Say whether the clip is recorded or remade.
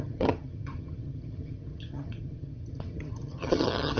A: remade